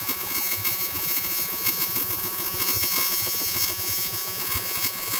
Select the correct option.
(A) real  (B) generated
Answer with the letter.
B